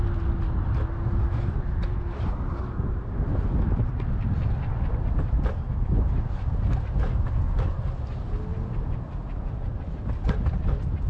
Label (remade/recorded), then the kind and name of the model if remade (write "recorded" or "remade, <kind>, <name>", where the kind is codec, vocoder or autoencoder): recorded